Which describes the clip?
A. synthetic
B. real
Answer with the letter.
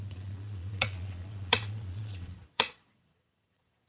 A